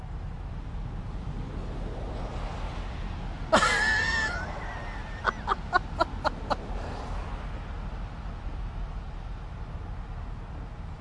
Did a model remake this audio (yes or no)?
no